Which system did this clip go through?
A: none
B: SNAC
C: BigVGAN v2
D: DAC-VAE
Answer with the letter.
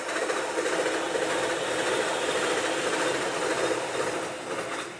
A